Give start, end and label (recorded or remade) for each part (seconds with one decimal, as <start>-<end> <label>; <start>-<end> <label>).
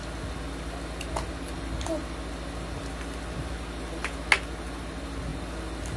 0.0-6.0 recorded